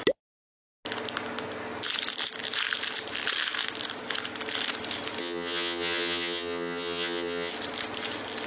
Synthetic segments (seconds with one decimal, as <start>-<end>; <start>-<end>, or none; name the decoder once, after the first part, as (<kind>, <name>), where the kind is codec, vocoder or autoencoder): 5.2-7.5 (vocoder, HiFi-GAN)